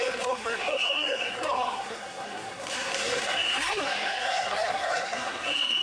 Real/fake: fake